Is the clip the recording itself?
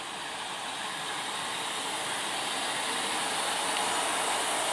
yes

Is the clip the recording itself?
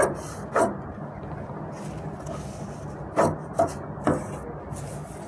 yes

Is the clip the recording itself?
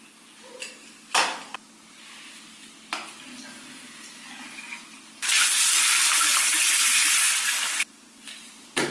yes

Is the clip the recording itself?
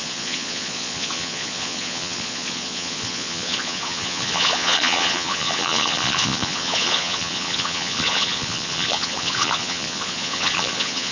no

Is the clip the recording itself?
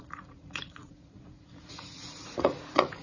no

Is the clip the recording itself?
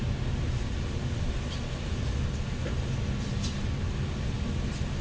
yes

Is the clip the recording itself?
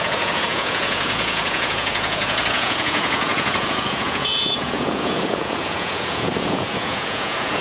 no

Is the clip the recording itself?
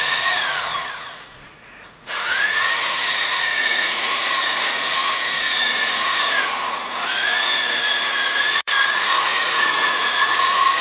no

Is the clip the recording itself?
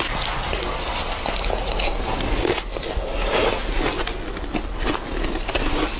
yes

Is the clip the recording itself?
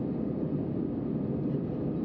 yes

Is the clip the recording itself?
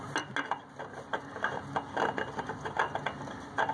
yes